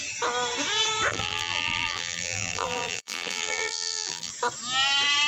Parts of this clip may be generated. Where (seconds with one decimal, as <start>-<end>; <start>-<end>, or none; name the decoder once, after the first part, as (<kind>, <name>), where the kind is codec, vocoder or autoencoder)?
1.1-4.3 (vocoder, BigVGAN v2)